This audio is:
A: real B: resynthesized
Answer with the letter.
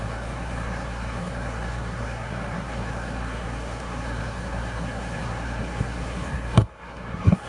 B